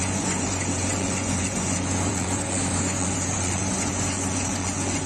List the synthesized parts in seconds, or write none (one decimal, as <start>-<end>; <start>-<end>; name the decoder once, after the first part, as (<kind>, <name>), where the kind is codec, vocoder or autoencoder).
0.0-5.1 (vocoder, Vocos)